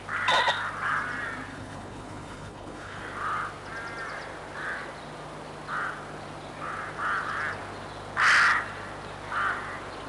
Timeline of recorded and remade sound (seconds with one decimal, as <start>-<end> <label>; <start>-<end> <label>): 0.0-1.5 recorded; 1.5-3.0 remade; 3.0-10.1 recorded